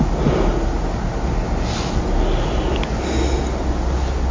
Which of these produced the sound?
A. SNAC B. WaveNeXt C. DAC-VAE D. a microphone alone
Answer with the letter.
D